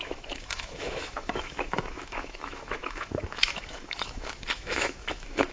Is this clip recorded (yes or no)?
no